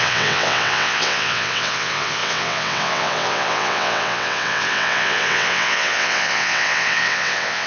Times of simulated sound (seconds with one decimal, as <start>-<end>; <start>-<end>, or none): 0.0-7.7